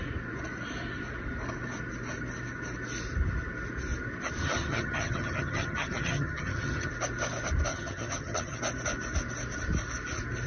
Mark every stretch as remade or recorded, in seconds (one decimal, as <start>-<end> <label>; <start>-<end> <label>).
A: 0.0-4.4 recorded; 4.4-6.9 remade; 6.9-7.7 recorded; 7.7-8.6 remade; 8.6-10.5 recorded